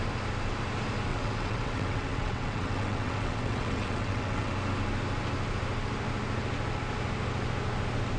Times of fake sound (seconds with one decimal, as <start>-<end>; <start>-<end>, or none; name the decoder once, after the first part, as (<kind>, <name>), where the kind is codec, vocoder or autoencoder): 1.1-4.5 (vocoder, WaveNeXt)